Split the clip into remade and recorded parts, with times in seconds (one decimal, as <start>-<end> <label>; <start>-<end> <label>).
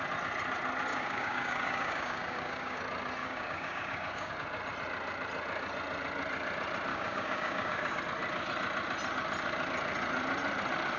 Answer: 0.0-0.9 recorded; 0.9-2.8 remade; 2.8-3.2 recorded; 3.2-4.3 remade; 4.3-6.9 recorded; 6.9-8.0 remade; 8.0-11.0 recorded